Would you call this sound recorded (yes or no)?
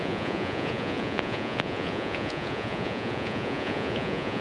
no